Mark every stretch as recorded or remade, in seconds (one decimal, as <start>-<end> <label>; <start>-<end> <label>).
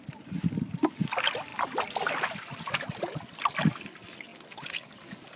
0.0-5.4 recorded